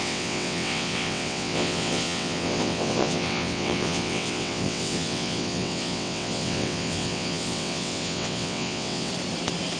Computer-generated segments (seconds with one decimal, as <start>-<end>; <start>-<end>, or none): 0.0-9.1

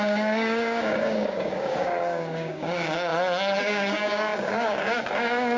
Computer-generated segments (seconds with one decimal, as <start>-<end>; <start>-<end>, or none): 0.0-3.1; 3.6-5.6

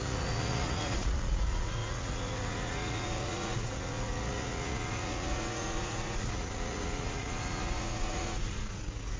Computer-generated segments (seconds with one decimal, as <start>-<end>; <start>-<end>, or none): 0.0-9.2

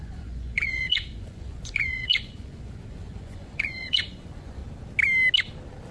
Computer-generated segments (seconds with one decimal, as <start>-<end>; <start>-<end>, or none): 0.0-4.6

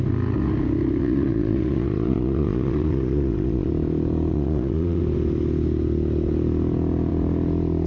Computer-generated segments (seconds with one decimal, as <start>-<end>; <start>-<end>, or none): 1.0-3.7; 4.3-5.0

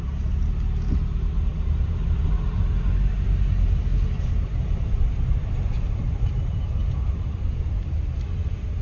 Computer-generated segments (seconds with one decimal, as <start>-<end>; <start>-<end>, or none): 1.5-2.6; 3.9-6.3

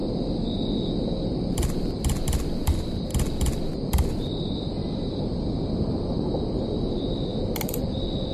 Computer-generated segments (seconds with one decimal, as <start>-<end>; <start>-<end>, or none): none

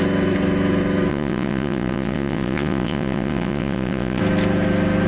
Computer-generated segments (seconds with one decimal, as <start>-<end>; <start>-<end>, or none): 1.1-4.2